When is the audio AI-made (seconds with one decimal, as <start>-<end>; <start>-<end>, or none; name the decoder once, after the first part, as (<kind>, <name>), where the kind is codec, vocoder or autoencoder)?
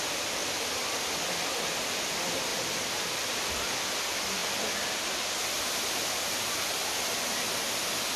0.4-1.6 (vocoder, BigVGAN v2); 2.5-3.8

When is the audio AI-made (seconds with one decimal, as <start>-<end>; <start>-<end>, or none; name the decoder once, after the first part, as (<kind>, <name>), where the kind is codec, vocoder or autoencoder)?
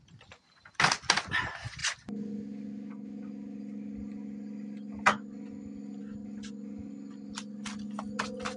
none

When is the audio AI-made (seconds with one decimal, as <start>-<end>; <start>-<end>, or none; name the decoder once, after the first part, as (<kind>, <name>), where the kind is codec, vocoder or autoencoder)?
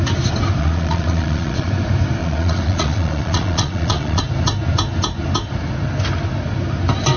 0.6-1.7 (vocoder, Vocos); 2.2-4.2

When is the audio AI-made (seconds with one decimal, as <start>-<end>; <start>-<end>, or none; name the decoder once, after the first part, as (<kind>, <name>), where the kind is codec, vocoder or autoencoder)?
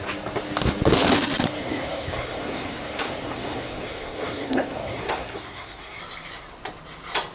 1.6-6.0 (codec, SNAC)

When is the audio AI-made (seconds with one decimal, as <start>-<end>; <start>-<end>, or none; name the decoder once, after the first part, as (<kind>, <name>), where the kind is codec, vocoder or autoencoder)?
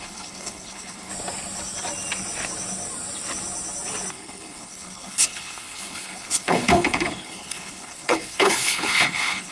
0.0-1.1 (codec, HILCodec); 4.1-9.5